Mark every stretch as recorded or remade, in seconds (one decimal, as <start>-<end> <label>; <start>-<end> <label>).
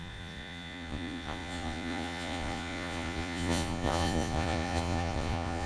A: 0.0-5.7 remade